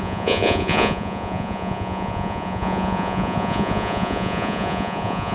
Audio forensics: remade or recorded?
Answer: remade